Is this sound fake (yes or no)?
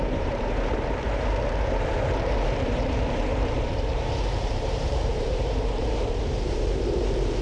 yes